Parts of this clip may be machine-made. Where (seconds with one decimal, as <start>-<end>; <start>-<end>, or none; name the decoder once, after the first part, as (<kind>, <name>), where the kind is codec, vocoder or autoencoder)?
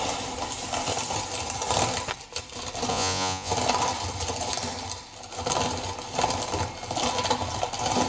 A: 2.9-3.5 (vocoder, Vocos)